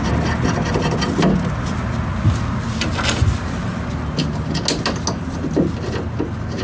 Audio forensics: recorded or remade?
recorded